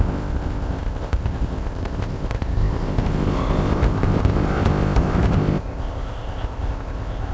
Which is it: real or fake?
fake